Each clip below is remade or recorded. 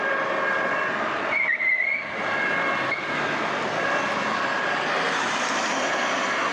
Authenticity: recorded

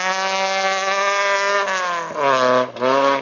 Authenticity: recorded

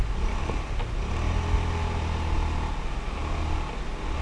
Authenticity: recorded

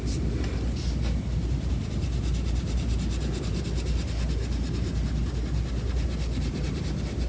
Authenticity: recorded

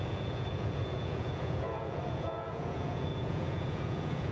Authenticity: remade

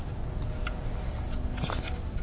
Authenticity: recorded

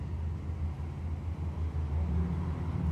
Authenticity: recorded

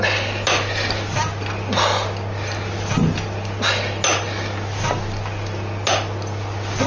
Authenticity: recorded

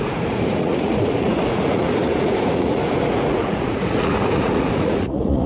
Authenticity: remade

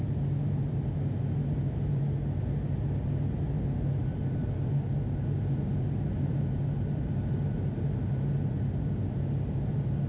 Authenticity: recorded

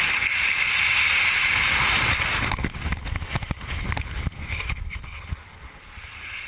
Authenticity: recorded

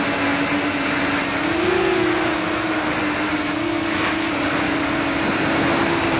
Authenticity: recorded